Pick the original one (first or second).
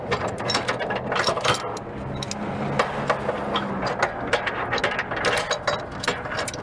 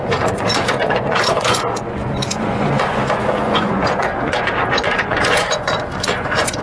first